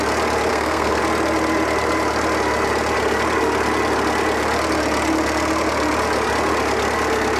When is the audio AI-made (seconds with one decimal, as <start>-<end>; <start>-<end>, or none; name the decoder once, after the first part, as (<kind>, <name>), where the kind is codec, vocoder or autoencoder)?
0.5-1.0 (codec, SNAC)